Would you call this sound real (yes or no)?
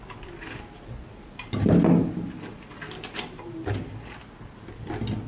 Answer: yes